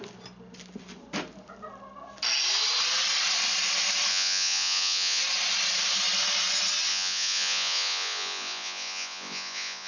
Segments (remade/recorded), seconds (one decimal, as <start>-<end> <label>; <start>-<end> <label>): 0.0-4.1 recorded; 4.1-5.2 remade; 5.2-6.9 recorded; 6.9-9.9 remade